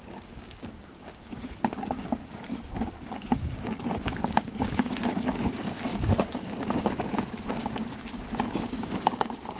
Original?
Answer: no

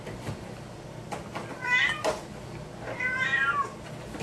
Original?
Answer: yes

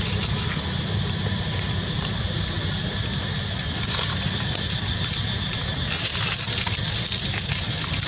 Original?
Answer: yes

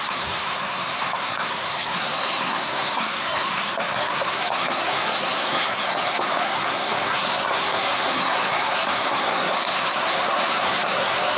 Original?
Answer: no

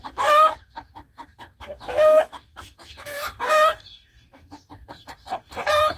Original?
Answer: no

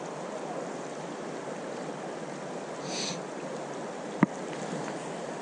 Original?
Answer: yes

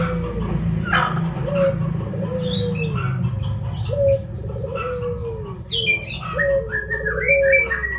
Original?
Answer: yes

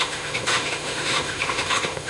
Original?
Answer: no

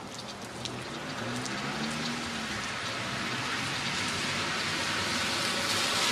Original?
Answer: yes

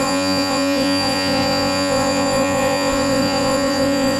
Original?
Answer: no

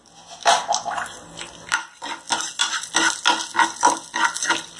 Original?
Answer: yes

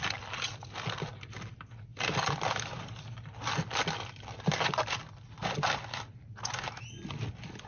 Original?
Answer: yes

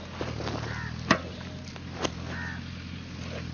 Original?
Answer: yes